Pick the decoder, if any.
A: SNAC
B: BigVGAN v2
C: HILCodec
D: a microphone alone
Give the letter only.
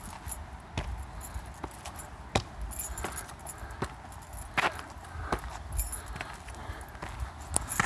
D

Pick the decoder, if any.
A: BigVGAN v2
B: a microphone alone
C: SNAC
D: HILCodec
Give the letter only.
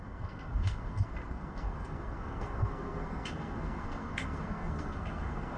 C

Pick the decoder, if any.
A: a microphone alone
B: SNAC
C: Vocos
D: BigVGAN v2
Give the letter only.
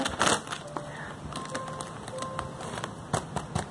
A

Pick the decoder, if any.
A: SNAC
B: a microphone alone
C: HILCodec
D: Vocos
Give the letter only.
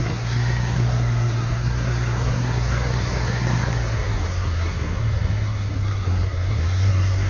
A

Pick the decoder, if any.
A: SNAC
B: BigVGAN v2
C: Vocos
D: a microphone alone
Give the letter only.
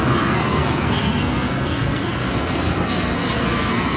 A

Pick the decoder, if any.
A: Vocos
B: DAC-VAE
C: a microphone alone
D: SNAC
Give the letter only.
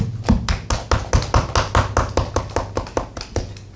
C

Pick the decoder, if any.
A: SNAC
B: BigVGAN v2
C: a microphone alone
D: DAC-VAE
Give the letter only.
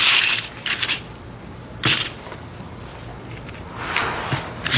C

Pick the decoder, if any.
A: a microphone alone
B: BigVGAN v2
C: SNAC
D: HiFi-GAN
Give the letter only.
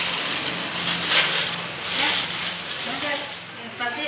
A